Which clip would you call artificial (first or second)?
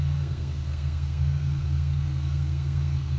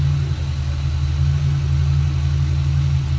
first